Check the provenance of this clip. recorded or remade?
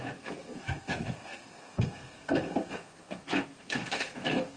remade